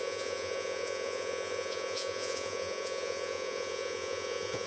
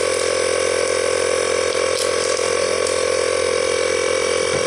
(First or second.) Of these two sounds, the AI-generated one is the first